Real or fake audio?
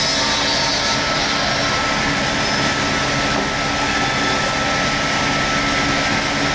real